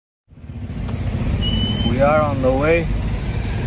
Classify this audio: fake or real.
real